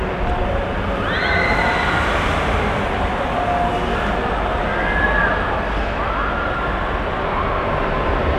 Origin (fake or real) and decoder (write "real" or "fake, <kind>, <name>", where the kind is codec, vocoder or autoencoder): real